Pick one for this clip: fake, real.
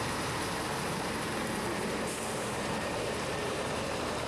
fake